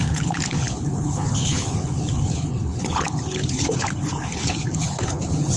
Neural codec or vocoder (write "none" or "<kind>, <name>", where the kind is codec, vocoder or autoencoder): codec, HILCodec